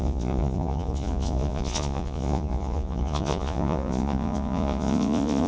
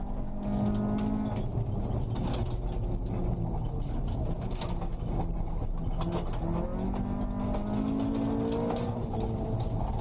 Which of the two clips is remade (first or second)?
first